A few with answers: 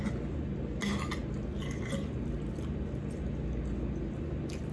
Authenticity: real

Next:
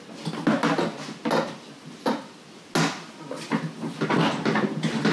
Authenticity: real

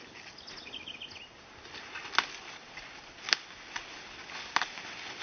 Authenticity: real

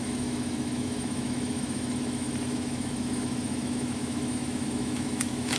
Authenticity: fake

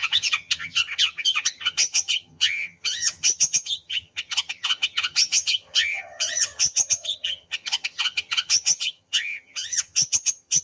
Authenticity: fake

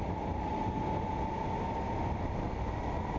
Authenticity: real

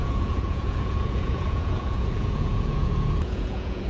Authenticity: fake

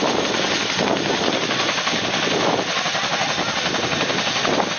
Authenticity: real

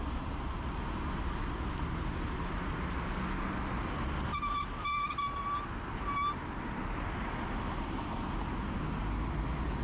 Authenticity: real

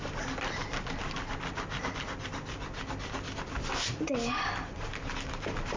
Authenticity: real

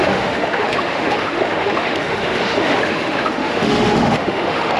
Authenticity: fake